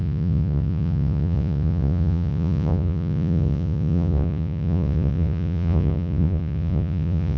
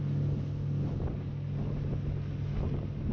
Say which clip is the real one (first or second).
second